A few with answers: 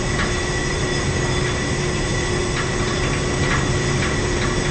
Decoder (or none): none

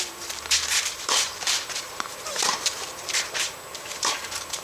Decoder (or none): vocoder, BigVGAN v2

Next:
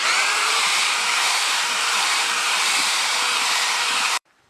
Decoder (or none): vocoder, BigVGAN v2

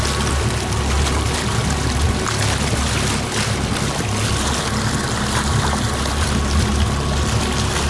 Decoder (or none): none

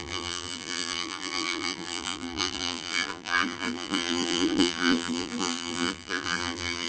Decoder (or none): vocoder, BigVGAN v2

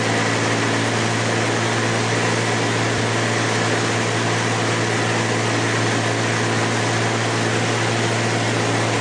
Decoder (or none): none